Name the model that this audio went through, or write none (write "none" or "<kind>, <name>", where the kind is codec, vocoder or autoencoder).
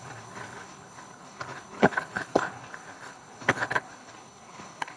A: codec, HILCodec